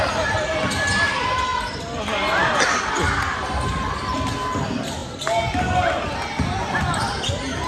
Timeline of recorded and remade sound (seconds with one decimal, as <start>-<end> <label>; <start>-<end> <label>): 0.0-7.7 recorded